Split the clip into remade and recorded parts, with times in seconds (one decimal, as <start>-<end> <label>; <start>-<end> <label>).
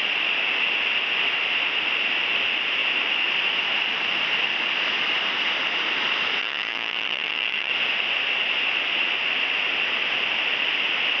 0.0-6.4 recorded; 6.4-7.7 remade; 7.7-11.2 recorded